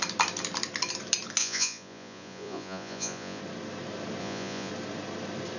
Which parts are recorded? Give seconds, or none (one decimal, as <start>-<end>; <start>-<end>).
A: 0.0-1.4; 3.4-4.2; 4.7-5.6

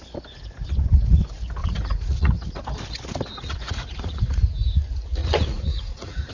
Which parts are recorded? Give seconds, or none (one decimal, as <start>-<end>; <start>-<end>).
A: 0.0-1.6; 2.6-3.3; 4.4-5.2

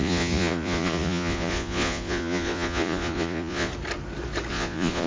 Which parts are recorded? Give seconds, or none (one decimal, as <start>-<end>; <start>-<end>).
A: 3.7-4.5